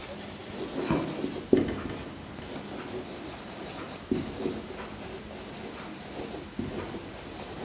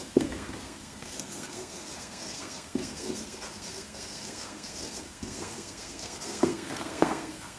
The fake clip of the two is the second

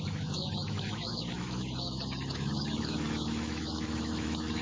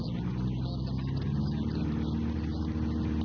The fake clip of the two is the first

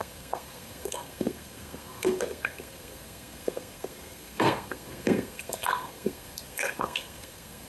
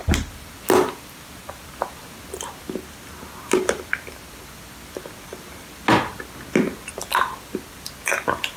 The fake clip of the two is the first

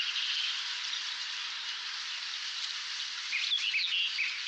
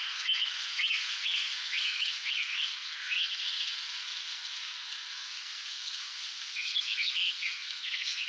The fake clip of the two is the second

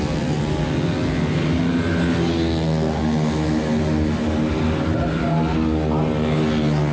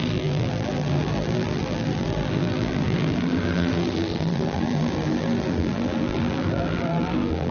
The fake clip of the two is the second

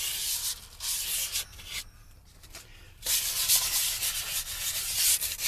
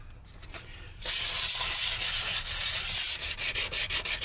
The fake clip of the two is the first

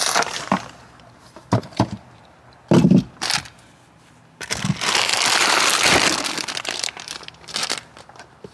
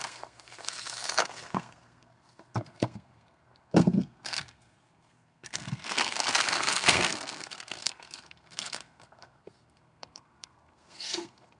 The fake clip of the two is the second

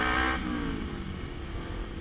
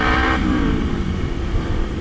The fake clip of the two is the second